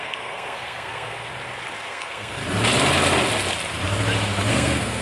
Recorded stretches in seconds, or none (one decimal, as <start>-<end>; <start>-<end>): 1.3-1.8; 2.4-4.5